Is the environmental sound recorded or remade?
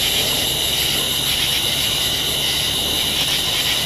recorded